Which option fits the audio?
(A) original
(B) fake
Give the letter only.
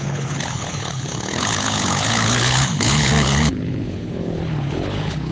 B